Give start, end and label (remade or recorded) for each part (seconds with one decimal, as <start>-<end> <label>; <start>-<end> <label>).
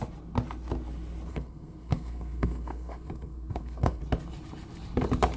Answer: 0.0-1.3 recorded; 1.3-4.0 remade; 4.0-5.4 recorded